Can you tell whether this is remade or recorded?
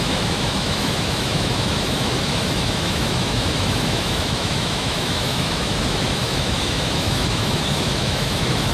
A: remade